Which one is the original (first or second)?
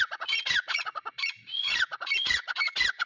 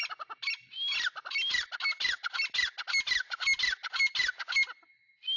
second